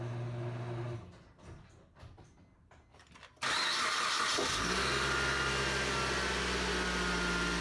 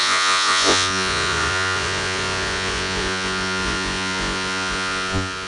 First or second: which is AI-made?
second